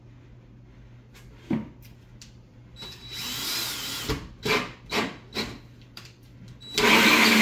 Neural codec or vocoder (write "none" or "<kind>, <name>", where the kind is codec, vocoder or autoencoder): none